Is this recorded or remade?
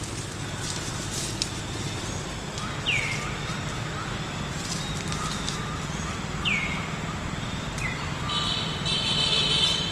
recorded